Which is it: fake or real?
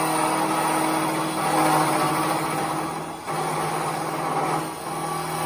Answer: real